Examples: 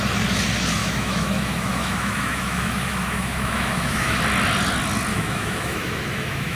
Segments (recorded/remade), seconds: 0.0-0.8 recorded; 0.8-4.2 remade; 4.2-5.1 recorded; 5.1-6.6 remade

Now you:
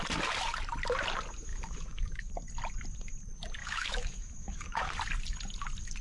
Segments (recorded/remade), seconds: 0.0-1.5 recorded; 1.5-2.3 remade; 2.3-3.6 recorded; 3.6-4.9 remade; 4.9-6.0 recorded

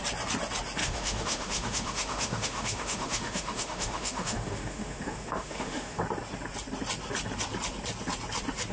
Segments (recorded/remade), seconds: 0.0-0.8 recorded; 0.8-6.0 remade; 6.0-8.7 recorded

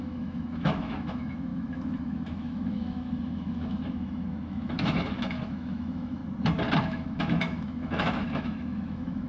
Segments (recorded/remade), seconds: 0.0-6.2 remade; 6.2-6.8 recorded; 6.8-9.3 remade

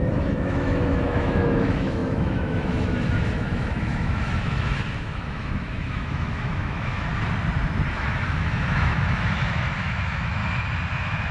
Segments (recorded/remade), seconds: 0.0-7.1 remade; 7.1-7.9 recorded; 7.9-10.4 remade; 10.4-10.9 recorded; 10.9-11.3 remade

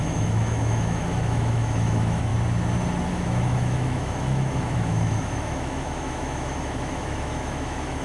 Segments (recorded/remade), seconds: 0.0-2.3 remade; 2.3-3.1 recorded; 3.1-8.0 remade

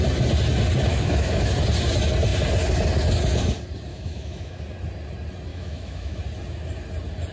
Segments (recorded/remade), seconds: 0.0-0.9 recorded; 0.9-1.5 remade; 1.5-3.9 recorded; 3.9-4.6 remade; 4.6-5.5 recorded; 5.5-6.2 remade; 6.2-7.3 recorded

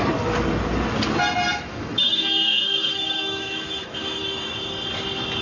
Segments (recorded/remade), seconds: 0.0-1.5 recorded; 1.5-4.2 remade; 4.2-5.4 recorded